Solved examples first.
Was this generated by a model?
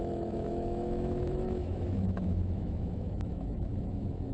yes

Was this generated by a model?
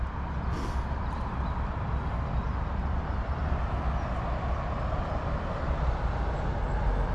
no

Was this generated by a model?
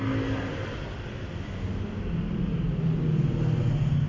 no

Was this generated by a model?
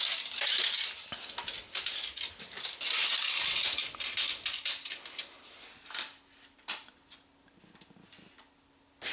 no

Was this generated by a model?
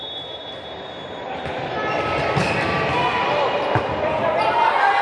no